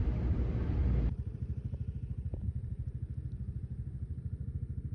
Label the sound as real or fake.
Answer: fake